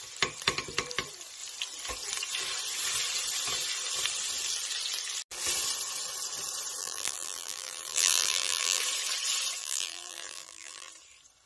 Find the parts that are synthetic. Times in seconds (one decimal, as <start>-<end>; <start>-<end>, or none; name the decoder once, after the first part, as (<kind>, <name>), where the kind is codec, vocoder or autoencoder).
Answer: 6.8-8.8 (vocoder, BigVGAN v2); 9.6-10.9

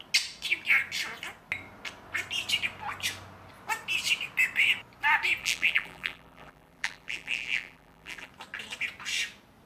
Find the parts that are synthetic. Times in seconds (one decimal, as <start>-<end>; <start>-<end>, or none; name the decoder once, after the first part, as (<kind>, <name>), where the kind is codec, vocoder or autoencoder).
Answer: 5.4-8.3 (vocoder, BigVGAN v2)

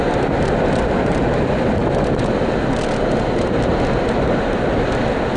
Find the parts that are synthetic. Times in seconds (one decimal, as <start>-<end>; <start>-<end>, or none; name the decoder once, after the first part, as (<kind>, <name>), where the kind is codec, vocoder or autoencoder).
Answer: none

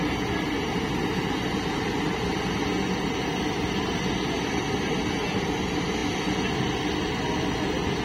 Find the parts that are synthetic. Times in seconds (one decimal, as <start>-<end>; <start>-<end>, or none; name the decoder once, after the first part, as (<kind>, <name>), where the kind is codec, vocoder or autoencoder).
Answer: none

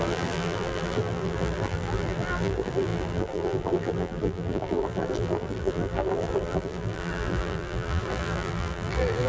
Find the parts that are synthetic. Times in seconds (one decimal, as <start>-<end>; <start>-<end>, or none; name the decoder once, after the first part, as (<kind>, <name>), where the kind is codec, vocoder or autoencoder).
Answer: 0.0-9.3 (vocoder, BigVGAN v2)